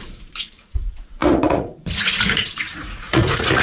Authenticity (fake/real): fake